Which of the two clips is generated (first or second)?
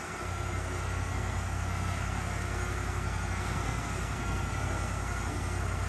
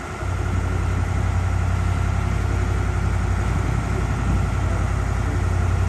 first